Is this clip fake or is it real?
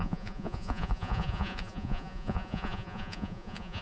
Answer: fake